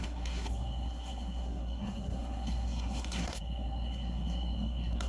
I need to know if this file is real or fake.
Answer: fake